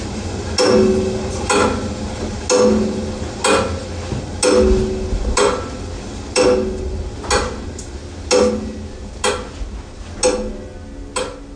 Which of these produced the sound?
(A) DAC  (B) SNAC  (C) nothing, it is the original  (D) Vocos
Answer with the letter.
C